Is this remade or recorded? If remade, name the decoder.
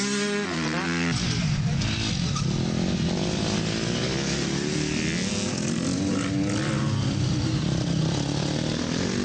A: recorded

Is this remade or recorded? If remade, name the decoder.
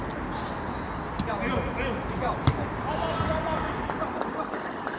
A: recorded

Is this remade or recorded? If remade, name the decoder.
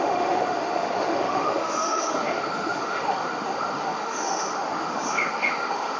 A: remade, autoencoder, DAC-VAE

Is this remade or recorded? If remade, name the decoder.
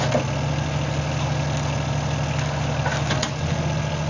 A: recorded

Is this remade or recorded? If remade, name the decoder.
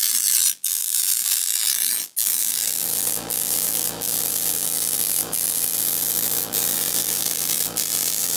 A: remade, vocoder, BigVGAN v2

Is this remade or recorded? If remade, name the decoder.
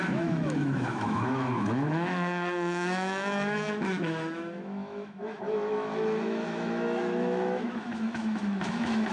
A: remade, autoencoder, DAC-VAE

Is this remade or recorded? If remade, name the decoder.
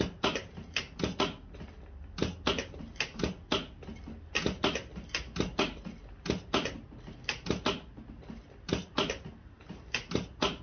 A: recorded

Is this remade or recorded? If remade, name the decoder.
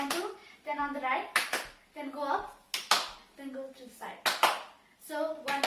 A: recorded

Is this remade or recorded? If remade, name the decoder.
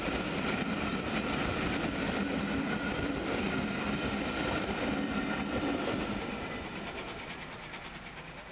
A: recorded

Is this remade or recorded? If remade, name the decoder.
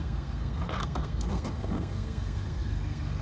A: remade, codec, SNAC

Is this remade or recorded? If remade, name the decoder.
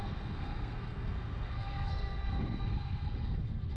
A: remade, codec, SNAC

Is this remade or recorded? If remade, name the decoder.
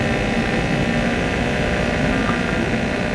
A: recorded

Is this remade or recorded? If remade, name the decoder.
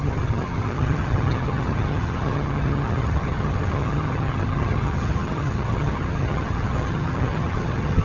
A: remade, vocoder, HiFi-GAN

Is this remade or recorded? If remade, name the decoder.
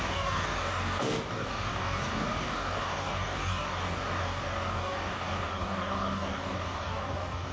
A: remade, codec, DAC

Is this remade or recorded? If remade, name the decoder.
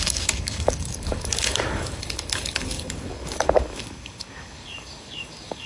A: remade, codec, DAC